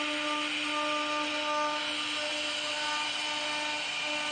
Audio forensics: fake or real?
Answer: real